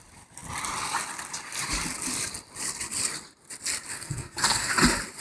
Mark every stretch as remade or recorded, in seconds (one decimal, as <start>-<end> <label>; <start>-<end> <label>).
0.0-3.9 recorded; 3.9-4.7 remade; 4.7-5.2 recorded

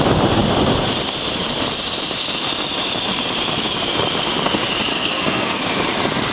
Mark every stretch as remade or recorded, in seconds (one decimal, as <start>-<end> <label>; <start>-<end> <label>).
0.0-4.9 recorded; 4.9-5.6 remade; 5.6-6.3 recorded

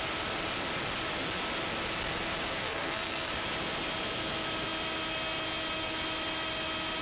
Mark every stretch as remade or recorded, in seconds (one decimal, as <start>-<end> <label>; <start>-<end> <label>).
0.0-2.6 recorded; 2.6-3.3 remade; 3.3-7.0 recorded

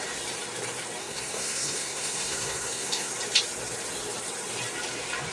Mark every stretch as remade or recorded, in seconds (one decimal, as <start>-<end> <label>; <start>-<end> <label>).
0.0-1.0 recorded; 1.0-3.1 remade; 3.1-5.3 recorded